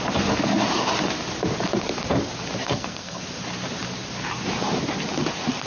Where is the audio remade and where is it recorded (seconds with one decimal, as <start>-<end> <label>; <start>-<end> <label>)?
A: 0.0-2.6 recorded; 2.6-3.2 remade; 3.2-5.7 recorded